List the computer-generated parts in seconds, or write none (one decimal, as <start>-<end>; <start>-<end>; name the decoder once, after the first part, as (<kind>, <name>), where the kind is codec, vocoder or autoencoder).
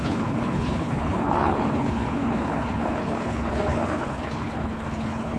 0.0-5.4 (codec, HILCodec)